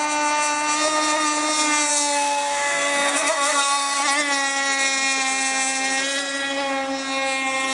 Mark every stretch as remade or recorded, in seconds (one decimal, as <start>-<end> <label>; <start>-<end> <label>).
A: 0.0-1.9 recorded; 1.9-4.0 remade; 4.0-7.7 recorded